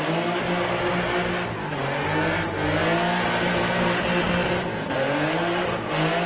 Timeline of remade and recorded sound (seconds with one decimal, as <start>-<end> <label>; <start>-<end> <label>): 0.0-6.3 recorded